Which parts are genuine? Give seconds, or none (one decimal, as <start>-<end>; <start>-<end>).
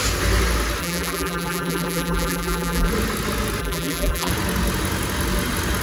0.0-0.8; 2.9-3.6; 4.3-5.8